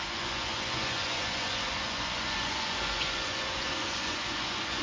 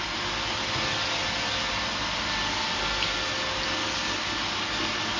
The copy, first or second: first